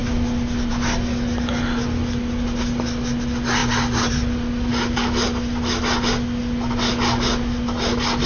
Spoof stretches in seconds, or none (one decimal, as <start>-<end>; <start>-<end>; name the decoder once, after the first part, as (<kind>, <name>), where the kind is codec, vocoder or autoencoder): none